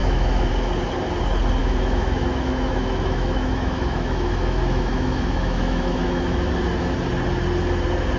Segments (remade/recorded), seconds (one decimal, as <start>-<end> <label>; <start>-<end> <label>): 0.0-0.5 remade; 0.5-1.6 recorded; 1.6-6.5 remade; 6.5-8.2 recorded